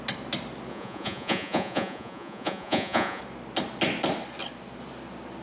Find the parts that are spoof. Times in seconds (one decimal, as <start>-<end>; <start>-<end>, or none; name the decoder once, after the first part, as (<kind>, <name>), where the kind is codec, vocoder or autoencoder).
0.7-3.2 (vocoder, Vocos)

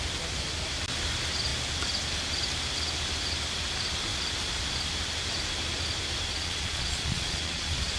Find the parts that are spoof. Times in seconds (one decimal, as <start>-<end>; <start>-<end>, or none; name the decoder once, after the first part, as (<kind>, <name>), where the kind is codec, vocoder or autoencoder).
6.3-8.0 (vocoder, Vocos)

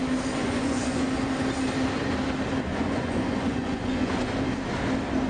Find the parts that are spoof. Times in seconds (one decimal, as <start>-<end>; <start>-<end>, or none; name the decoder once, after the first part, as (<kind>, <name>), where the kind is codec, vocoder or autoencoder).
0.4-1.1 (vocoder, Vocos); 2.7-4.3

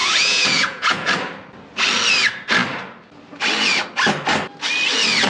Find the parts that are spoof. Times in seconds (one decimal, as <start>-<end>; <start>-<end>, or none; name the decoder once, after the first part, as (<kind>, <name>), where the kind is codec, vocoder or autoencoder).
0.0-1.1 (vocoder, Vocos)

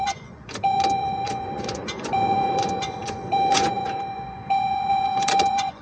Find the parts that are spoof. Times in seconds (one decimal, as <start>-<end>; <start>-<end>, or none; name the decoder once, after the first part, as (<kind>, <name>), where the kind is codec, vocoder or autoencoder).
0.0-5.8 (vocoder, Vocos)

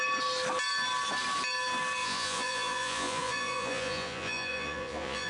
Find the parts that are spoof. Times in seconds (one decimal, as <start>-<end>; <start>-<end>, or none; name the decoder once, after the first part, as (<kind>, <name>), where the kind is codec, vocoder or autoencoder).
2.0-5.3 (vocoder, Vocos)

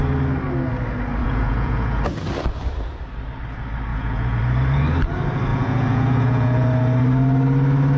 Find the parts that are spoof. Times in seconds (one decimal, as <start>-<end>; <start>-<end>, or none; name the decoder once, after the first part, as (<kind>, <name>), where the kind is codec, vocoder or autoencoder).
1.2-2.0 (vocoder, Vocos); 3.9-4.4; 5.5-6.7